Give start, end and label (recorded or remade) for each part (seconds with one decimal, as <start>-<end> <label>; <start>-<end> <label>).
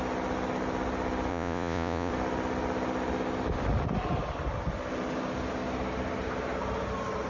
0.0-1.3 recorded; 1.3-2.1 remade; 2.1-7.3 recorded